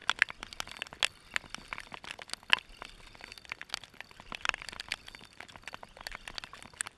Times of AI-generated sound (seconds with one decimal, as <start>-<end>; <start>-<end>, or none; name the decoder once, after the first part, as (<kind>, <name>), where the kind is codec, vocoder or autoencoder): none

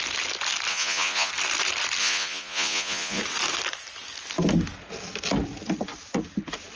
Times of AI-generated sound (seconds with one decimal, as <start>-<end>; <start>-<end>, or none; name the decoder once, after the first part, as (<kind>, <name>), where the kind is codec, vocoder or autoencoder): 0.7-1.3 (vocoder, Vocos); 2.0-3.2